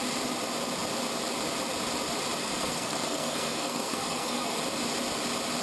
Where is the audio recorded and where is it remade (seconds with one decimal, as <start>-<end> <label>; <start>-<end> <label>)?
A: 0.0-2.4 recorded; 2.4-4.6 remade; 4.6-5.6 recorded

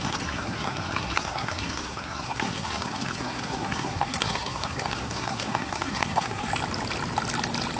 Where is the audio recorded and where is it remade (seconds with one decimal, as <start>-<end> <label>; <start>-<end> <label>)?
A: 0.0-6.5 remade; 6.5-7.8 recorded